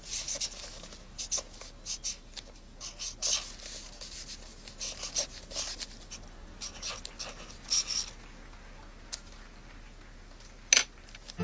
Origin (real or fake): real